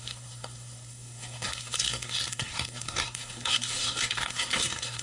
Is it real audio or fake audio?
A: fake